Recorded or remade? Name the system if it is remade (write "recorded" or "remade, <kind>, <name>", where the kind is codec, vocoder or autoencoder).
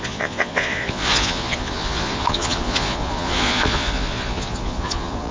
remade, vocoder, Vocos